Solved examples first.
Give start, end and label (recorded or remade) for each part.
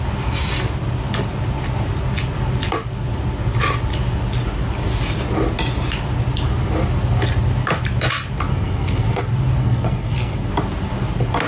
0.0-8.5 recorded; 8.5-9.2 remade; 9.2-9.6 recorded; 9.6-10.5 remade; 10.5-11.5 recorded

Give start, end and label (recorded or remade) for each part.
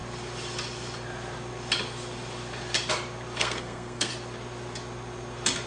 0.0-3.4 recorded; 3.4-4.1 remade; 4.1-5.7 recorded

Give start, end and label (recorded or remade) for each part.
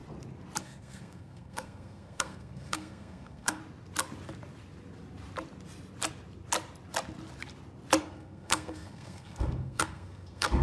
0.0-0.6 recorded; 0.6-3.6 remade; 3.6-8.0 recorded; 8.0-10.6 remade